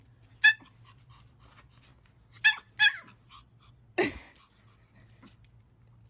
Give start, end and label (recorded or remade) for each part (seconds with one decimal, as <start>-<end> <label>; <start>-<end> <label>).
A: 0.0-6.1 recorded